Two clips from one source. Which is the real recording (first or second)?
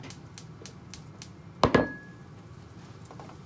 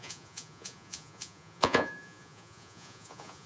first